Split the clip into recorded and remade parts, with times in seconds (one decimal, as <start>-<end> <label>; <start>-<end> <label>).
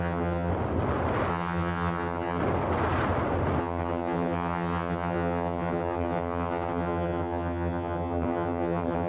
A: 0.0-0.5 remade; 0.5-1.3 recorded; 1.3-2.4 remade; 2.4-3.6 recorded; 3.6-9.1 remade